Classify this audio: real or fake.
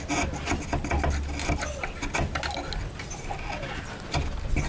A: real